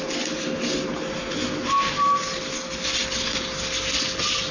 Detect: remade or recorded recorded